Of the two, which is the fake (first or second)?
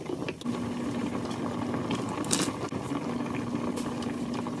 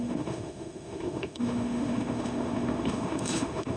second